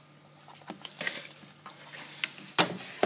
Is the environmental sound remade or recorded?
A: recorded